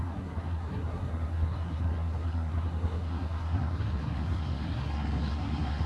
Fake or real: fake